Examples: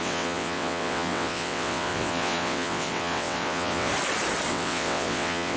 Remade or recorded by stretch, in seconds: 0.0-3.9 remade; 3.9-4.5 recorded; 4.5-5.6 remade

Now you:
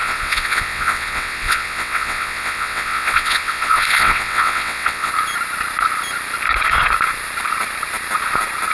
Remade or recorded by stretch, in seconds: 0.0-5.1 remade; 5.1-8.7 recorded

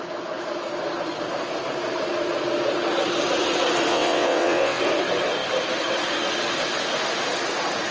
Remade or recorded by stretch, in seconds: 0.0-3.9 recorded; 3.9-4.8 remade; 4.8-7.9 recorded

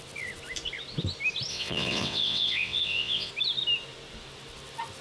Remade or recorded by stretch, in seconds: 0.0-1.5 recorded; 1.5-3.3 remade; 3.3-5.0 recorded

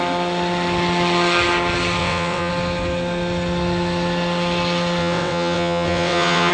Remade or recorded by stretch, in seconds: 0.0-2.0 recorded; 2.0-2.5 remade; 2.5-5.0 recorded; 5.0-6.5 remade

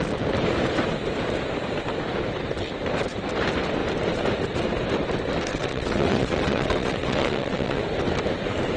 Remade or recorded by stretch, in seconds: 0.0-5.5 recorded; 5.5-7.8 remade; 7.8-8.8 recorded

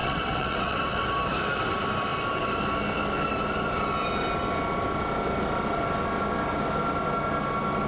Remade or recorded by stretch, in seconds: 0.0-1.0 remade; 1.0-7.9 recorded